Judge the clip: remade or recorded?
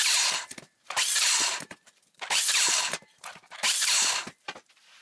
remade